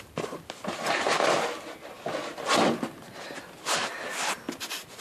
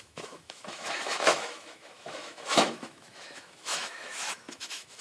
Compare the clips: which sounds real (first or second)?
first